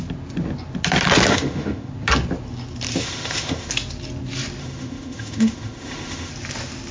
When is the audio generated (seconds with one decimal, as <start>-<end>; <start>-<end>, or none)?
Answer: 1.3-1.9; 3.0-3.7; 4.6-6.3